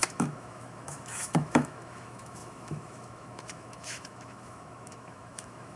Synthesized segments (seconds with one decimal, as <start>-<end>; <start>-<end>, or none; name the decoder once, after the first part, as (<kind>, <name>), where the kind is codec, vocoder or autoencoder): 0.0-5.8 (autoencoder, DAC-VAE)